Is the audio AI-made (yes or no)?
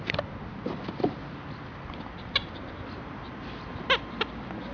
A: no